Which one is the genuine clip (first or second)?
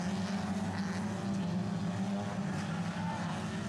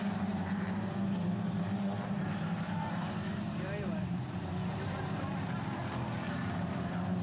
first